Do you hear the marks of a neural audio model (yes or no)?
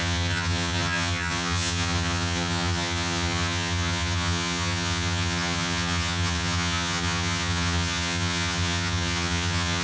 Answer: yes